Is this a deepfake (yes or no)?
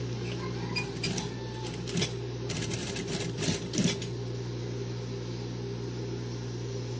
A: no